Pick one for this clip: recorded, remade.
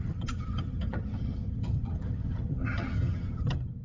remade